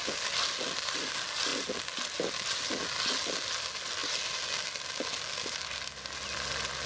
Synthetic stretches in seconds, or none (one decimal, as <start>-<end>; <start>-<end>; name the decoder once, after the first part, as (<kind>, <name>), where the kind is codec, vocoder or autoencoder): none